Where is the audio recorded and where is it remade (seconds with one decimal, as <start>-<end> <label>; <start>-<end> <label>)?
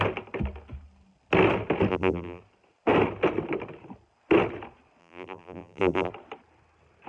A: 0.0-1.9 recorded; 1.9-2.4 remade; 2.4-5.0 recorded; 5.0-6.1 remade; 6.1-7.1 recorded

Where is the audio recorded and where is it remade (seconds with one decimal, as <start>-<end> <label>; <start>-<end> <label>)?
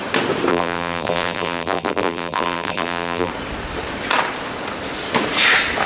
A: 0.0-0.5 recorded; 0.5-3.3 remade; 3.3-5.9 recorded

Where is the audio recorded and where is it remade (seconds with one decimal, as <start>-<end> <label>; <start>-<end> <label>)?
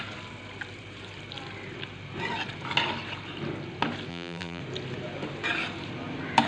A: 0.0-4.1 recorded; 4.1-4.6 remade; 4.6-6.5 recorded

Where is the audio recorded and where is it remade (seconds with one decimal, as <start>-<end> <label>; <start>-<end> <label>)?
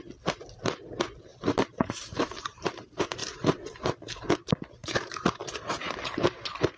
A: 0.0-1.3 recorded; 1.3-2.8 remade; 2.8-3.2 recorded; 3.2-4.3 remade; 4.3-4.8 recorded; 4.8-6.8 remade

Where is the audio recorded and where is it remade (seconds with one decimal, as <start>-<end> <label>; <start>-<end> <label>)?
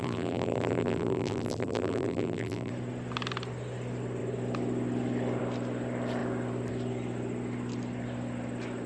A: 0.0-2.7 remade; 2.7-8.9 recorded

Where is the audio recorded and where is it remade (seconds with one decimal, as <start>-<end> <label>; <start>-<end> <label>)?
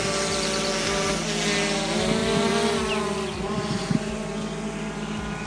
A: 0.0-5.5 recorded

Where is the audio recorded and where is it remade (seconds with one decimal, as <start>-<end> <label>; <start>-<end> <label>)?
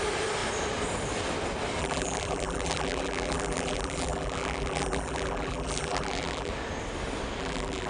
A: 0.0-1.8 recorded; 1.8-6.5 remade; 6.5-7.4 recorded; 7.4-7.9 remade